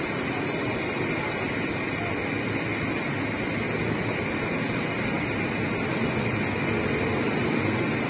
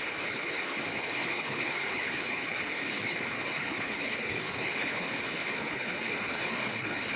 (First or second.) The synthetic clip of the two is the second